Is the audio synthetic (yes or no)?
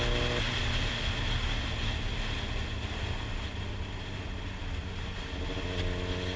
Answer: no